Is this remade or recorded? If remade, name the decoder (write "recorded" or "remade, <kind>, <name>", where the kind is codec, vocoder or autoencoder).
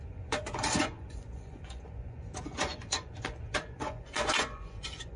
remade, vocoder, Vocos